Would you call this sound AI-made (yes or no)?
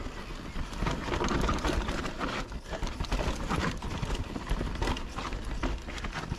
no